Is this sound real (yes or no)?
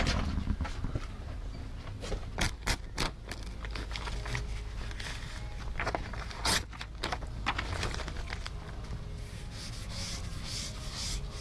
yes